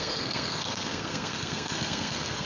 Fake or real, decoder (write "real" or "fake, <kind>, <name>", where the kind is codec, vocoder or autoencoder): fake, codec, SNAC